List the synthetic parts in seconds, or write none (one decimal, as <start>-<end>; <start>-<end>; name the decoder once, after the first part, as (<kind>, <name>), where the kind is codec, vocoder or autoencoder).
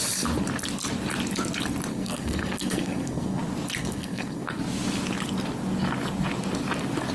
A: 1.9-3.4 (codec, SNAC); 3.8-4.6